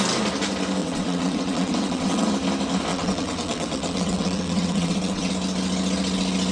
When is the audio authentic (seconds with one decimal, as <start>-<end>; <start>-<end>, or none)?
0.0-0.8; 2.3-2.9; 5.3-6.5